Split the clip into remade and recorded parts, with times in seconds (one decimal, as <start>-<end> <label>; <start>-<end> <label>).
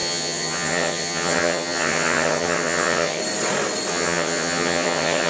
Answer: 0.0-3.2 remade; 3.2-3.9 recorded; 3.9-5.3 remade